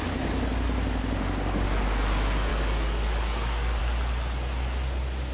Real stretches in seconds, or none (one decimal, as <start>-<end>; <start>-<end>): 0.0-2.5; 3.8-5.3